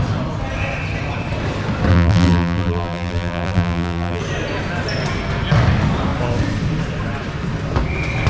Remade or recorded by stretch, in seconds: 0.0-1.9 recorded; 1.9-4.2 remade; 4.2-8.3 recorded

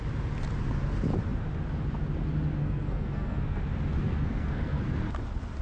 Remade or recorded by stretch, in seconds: 0.0-2.6 recorded; 2.6-3.6 remade; 3.6-4.0 recorded; 4.0-4.9 remade; 4.9-5.6 recorded

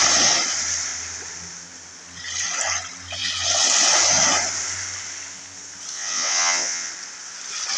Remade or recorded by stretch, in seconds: 0.0-5.9 recorded; 5.9-6.9 remade; 6.9-7.8 recorded